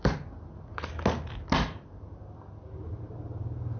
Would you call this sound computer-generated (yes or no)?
no